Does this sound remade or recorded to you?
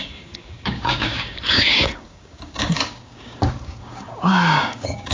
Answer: remade